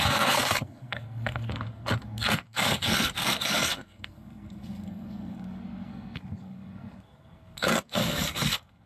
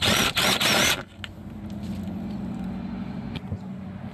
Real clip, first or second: second